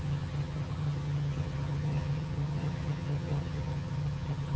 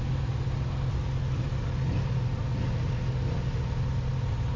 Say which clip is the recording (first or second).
second